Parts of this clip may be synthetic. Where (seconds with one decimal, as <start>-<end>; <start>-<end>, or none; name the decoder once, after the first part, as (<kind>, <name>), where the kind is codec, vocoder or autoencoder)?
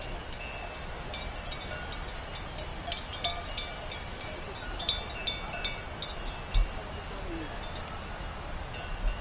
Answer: none